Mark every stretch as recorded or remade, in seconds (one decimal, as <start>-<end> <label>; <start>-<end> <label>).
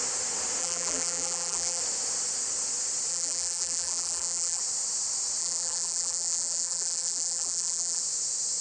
0.0-0.6 recorded; 0.6-1.8 remade; 1.8-3.1 recorded; 3.1-4.6 remade; 4.6-5.4 recorded; 5.4-8.0 remade; 8.0-8.6 recorded